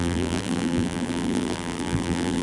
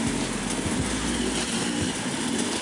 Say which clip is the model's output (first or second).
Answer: first